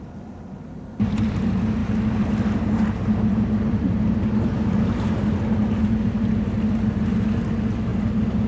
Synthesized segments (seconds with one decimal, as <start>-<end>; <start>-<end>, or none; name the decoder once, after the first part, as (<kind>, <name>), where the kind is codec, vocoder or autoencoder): none